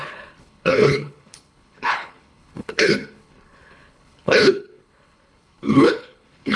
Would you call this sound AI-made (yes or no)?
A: yes